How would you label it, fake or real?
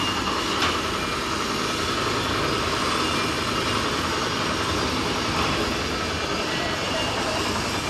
real